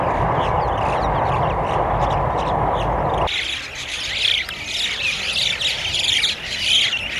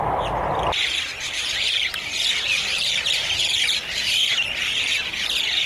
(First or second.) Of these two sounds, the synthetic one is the second